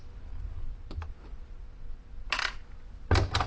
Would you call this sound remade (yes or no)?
no